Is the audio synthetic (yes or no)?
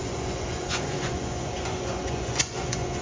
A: yes